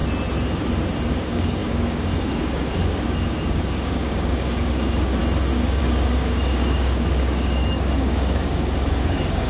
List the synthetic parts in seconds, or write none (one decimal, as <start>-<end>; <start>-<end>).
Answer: 1.1-5.2; 5.8-9.5